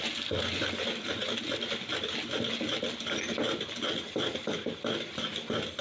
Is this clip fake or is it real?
real